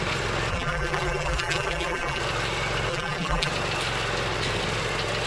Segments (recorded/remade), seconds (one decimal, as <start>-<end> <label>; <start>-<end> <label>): 0.0-0.5 recorded; 0.5-2.2 remade; 2.2-2.9 recorded; 2.9-3.5 remade; 3.5-5.3 recorded